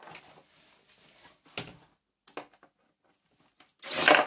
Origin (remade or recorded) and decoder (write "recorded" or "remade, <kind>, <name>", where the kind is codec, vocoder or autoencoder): recorded